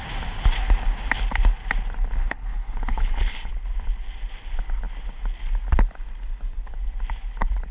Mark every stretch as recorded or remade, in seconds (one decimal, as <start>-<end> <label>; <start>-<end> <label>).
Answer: 0.0-2.2 recorded; 2.2-3.5 remade; 3.5-7.7 recorded